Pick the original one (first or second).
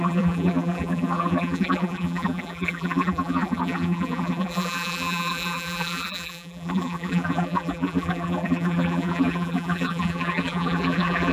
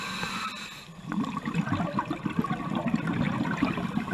second